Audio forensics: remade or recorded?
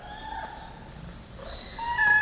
recorded